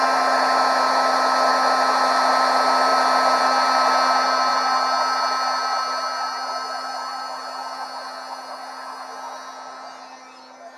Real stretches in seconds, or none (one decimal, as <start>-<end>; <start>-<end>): 0.0-10.8